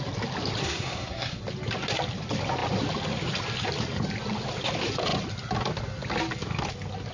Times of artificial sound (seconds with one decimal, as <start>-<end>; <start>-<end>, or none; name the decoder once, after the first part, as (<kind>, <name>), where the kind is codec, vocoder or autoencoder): 0.6-1.4 (codec, SNAC)